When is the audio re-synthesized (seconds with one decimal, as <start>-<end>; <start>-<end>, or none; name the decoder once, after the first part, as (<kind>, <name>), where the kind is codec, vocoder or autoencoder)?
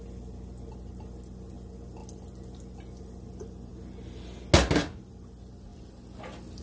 none